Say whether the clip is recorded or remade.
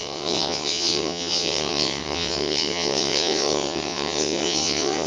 remade